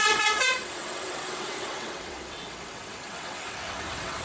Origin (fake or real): fake